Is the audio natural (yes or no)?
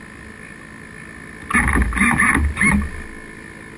yes